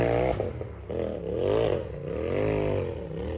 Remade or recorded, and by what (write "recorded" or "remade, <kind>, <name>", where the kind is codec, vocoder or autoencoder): recorded